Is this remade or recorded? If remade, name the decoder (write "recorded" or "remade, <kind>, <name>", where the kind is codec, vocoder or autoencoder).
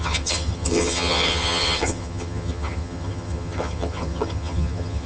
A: remade, vocoder, HiFi-GAN